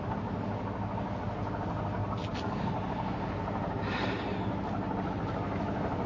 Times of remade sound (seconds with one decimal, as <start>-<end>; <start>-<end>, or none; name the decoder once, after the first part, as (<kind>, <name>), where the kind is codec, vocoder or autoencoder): none